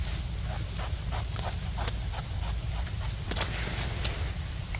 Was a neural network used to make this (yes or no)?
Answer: no